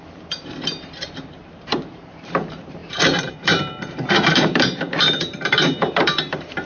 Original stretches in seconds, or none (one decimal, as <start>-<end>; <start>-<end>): none

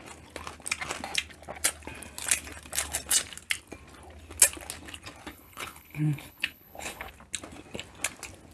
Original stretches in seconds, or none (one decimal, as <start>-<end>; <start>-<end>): 0.0-5.3; 7.1-8.5

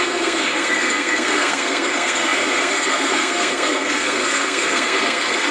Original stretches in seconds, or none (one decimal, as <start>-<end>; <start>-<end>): none